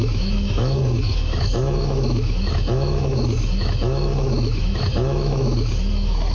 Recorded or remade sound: remade